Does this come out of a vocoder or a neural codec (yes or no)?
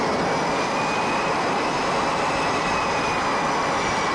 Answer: no